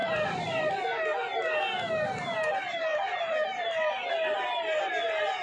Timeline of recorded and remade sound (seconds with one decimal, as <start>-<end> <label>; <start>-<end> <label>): 0.0-0.7 remade; 0.7-2.9 recorded; 2.9-4.1 remade; 4.1-5.4 recorded